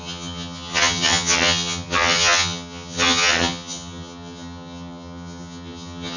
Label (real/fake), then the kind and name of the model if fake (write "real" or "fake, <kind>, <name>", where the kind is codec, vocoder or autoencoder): fake, vocoder, HiFi-GAN